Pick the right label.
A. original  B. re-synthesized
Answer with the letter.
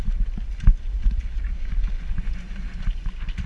A